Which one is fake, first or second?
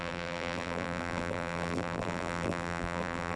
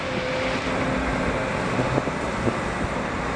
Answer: first